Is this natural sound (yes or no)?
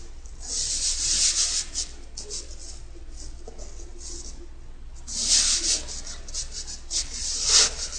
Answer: yes